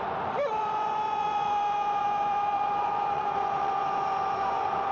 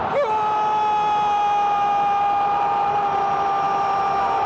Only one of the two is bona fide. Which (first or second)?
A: second